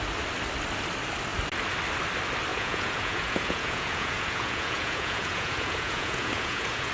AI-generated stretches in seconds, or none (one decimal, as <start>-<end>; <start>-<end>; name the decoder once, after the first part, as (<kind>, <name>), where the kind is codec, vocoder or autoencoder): 2.5-6.9 (vocoder, Vocos)